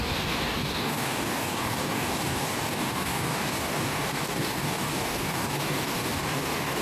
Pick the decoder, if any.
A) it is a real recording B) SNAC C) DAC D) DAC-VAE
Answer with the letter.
C